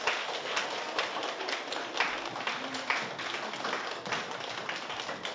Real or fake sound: real